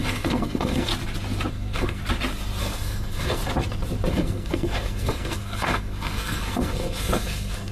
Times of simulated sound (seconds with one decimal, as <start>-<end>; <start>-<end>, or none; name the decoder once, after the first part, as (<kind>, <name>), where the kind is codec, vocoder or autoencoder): 0.0-0.9 (codec, SNAC); 1.5-2.0; 2.6-3.4; 4.1-7.7